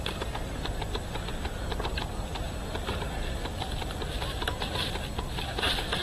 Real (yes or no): yes